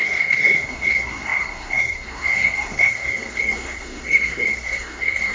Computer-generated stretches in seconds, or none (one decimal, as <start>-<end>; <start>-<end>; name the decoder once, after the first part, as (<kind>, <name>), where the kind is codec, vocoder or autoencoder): 0.0-5.3 (codec, SNAC)